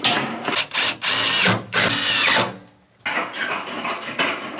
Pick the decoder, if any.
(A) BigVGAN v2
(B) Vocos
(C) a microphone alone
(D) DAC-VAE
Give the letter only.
C